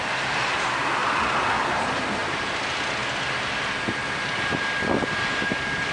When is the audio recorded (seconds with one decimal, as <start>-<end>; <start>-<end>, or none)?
0.0-5.9